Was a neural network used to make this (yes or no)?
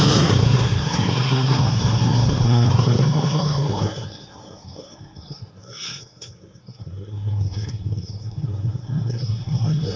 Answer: yes